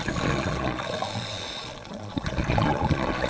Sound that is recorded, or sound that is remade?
remade